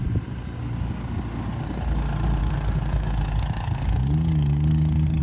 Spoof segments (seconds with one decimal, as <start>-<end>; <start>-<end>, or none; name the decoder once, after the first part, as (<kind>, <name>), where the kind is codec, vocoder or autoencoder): 2.4-5.2 (codec, DAC)